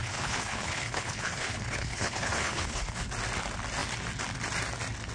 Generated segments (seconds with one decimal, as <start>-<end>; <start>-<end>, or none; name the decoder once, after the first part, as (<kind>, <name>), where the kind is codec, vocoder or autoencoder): 0.0-3.1 (codec, HILCodec)